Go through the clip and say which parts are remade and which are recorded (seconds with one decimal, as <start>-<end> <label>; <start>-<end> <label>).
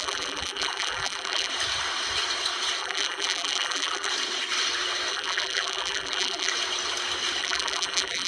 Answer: 0.0-1.5 remade; 1.5-2.8 recorded; 2.8-4.1 remade; 4.1-5.1 recorded; 5.1-6.5 remade; 6.5-7.4 recorded; 7.4-8.3 remade